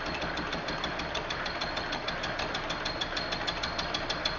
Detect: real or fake real